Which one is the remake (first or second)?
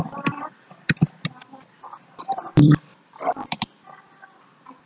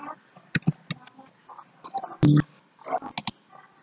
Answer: first